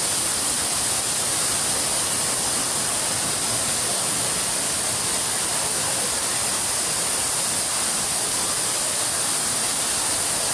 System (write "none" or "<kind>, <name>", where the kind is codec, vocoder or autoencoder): none